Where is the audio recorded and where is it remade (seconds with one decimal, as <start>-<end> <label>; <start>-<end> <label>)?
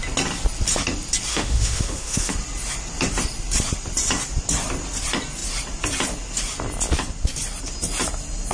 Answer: 0.0-1.3 recorded; 1.3-2.3 remade; 2.3-8.5 recorded